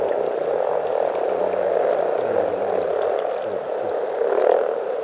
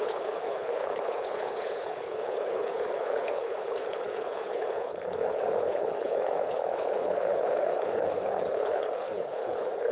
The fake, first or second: second